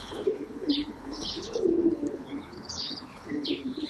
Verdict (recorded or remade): remade